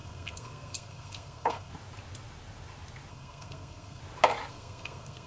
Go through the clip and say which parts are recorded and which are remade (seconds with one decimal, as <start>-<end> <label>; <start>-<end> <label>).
0.0-1.7 remade; 1.7-3.1 recorded; 3.1-4.0 remade; 4.0-4.5 recorded; 4.5-5.3 remade